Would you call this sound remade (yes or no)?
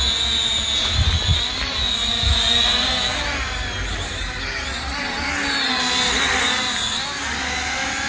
no